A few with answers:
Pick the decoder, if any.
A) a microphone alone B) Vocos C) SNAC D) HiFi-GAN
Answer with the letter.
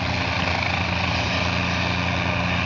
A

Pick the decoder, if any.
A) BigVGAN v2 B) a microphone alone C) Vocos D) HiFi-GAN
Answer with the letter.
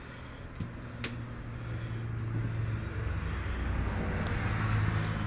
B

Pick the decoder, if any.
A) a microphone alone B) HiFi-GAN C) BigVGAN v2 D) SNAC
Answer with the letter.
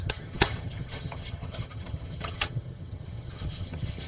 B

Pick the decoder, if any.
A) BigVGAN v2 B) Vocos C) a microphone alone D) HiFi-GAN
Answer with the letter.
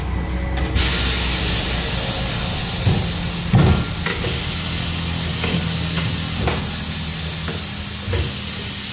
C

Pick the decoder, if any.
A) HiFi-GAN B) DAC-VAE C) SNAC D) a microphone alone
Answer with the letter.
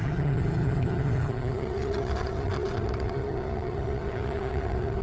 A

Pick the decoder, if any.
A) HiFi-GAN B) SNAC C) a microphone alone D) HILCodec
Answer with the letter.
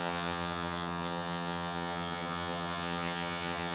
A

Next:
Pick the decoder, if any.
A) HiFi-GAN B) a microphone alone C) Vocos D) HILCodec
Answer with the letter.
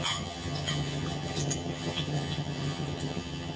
A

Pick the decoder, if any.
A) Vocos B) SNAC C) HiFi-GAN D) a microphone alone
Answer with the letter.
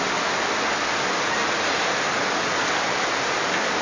D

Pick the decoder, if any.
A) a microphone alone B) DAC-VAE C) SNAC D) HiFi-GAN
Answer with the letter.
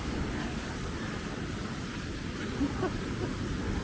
A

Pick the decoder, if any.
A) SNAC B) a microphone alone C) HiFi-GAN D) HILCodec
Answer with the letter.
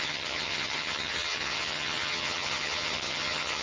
C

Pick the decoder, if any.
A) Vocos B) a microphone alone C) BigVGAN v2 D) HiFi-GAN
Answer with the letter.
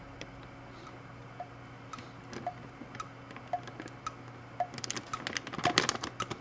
B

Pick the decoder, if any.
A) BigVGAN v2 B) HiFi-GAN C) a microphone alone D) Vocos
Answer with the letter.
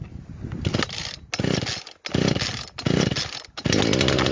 C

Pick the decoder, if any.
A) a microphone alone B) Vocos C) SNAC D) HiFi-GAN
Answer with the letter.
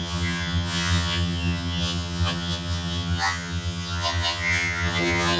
D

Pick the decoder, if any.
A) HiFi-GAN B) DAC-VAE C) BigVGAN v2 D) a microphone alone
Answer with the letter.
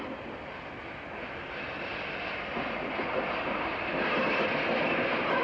D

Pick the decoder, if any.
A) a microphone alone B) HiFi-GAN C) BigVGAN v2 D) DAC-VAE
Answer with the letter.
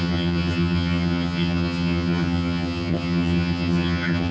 B